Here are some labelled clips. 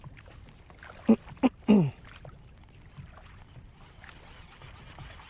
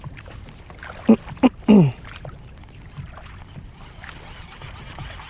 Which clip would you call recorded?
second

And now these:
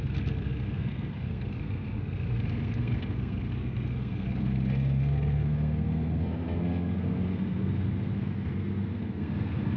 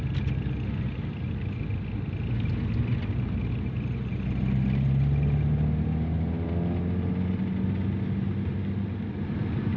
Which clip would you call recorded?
second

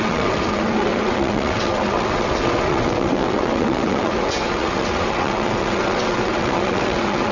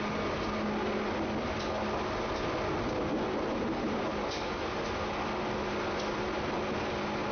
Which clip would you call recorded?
second